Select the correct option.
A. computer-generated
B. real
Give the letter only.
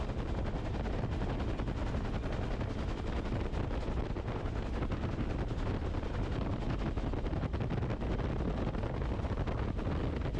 B